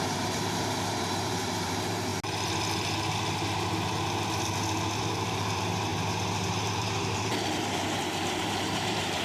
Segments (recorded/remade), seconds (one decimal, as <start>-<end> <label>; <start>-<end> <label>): 0.0-2.1 remade; 2.1-5.0 recorded; 5.0-5.9 remade; 5.9-6.5 recorded; 6.5-9.2 remade